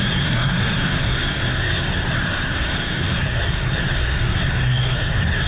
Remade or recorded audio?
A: remade